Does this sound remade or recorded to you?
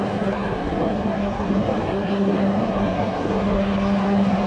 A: remade